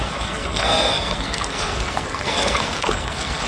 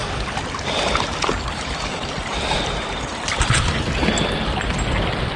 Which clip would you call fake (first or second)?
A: first